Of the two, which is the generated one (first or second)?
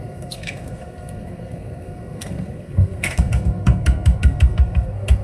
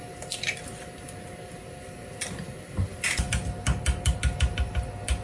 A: first